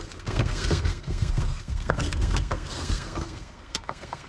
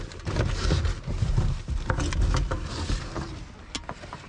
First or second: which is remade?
first